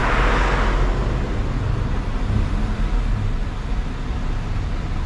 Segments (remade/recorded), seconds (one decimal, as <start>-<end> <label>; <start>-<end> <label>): 0.0-5.1 recorded